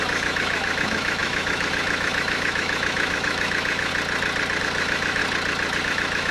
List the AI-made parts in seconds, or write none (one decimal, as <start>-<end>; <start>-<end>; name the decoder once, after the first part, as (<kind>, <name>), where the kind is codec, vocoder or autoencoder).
0.0-3.9 (autoencoder, DAC-VAE); 4.6-5.2; 5.8-6.3